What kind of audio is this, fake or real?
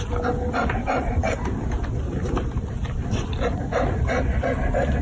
real